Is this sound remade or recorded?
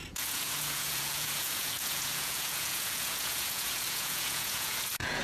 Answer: remade